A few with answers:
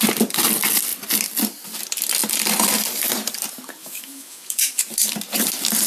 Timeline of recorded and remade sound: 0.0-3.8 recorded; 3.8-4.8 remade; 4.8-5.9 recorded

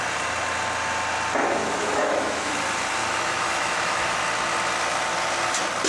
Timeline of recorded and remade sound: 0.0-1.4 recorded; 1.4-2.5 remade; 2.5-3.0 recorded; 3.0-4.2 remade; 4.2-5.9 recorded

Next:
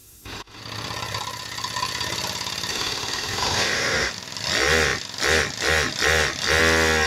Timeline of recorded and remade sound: 0.0-0.6 remade; 0.6-2.7 recorded; 2.7-4.1 remade; 4.1-7.1 recorded

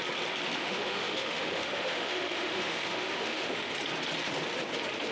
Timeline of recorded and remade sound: 0.0-0.6 recorded; 0.6-3.7 remade; 3.7-5.1 recorded

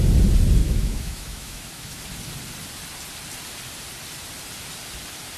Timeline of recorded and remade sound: 0.0-0.6 recorded; 0.6-2.0 remade; 2.0-5.4 recorded

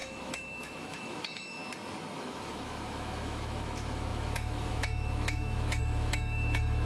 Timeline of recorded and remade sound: 0.0-1.6 remade; 1.6-2.2 recorded; 2.2-6.9 remade

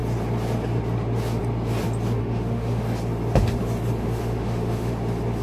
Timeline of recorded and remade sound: 0.0-2.2 recorded; 2.2-2.8 remade; 2.8-4.0 recorded; 4.0-4.9 remade; 4.9-5.4 recorded